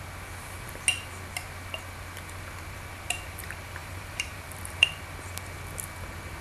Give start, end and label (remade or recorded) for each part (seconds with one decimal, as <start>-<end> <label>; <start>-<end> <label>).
0.0-3.8 recorded; 3.8-4.9 remade; 4.9-6.4 recorded